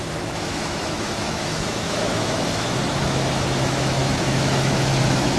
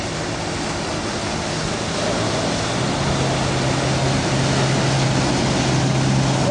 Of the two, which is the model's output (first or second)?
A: first